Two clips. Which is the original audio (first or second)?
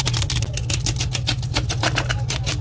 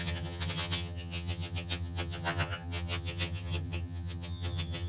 first